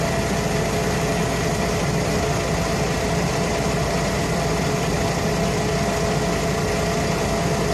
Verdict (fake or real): real